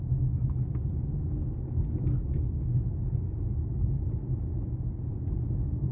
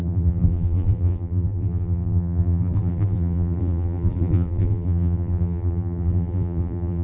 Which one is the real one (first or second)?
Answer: first